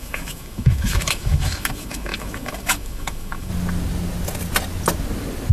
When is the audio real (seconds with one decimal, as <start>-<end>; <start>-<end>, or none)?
3.5-5.5